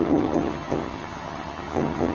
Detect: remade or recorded remade